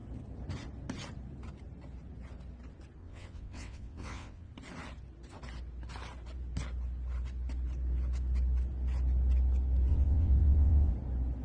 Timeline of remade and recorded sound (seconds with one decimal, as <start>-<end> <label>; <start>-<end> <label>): 0.0-3.0 recorded; 3.0-4.5 remade; 4.5-9.9 recorded; 9.9-10.9 remade; 10.9-11.4 recorded